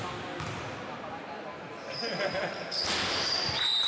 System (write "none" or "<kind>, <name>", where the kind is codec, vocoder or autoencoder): none